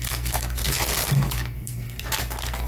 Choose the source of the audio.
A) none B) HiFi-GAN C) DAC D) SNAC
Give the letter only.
D